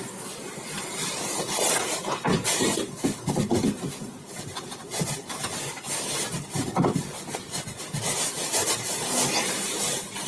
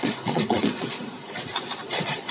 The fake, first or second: second